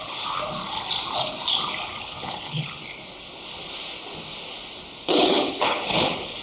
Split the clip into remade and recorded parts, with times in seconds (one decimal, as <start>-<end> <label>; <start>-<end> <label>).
0.0-0.4 remade; 0.4-2.0 recorded; 2.0-2.8 remade; 2.8-5.0 recorded; 5.0-6.4 remade